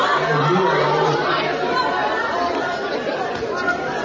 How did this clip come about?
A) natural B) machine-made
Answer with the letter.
A